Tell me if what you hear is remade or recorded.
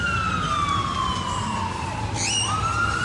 recorded